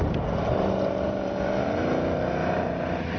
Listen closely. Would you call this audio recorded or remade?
recorded